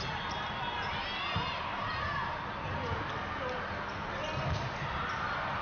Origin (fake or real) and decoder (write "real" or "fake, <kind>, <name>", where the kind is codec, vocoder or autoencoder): real